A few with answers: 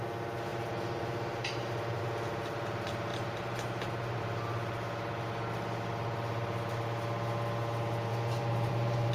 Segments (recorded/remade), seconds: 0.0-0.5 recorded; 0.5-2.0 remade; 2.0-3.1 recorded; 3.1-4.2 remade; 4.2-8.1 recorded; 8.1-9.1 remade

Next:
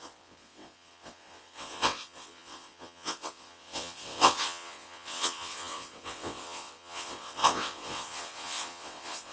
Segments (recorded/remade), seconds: 0.0-9.3 remade

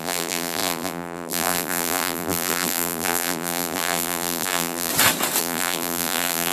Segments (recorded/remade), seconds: 0.0-4.9 remade; 4.9-5.4 recorded; 5.4-6.5 remade

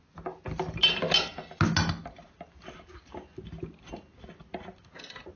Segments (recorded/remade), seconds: 0.0-5.4 recorded

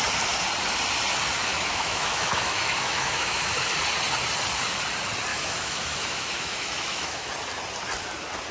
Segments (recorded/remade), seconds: 0.0-1.5 recorded; 1.5-3.5 remade; 3.5-5.3 recorded; 5.3-7.3 remade; 7.3-8.5 recorded

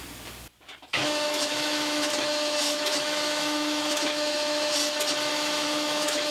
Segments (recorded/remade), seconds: 0.0-0.9 recorded; 0.9-4.7 remade; 4.7-5.3 recorded; 5.3-6.3 remade

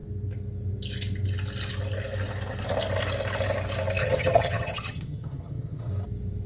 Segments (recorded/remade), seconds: 0.0-4.0 recorded; 4.0-5.9 remade; 5.9-6.5 recorded